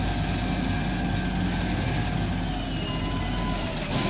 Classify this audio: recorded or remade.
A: recorded